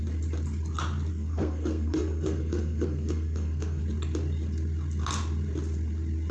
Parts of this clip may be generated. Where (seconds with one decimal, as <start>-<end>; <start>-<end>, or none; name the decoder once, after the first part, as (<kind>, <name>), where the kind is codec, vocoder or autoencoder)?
1.1-3.8 (codec, SNAC)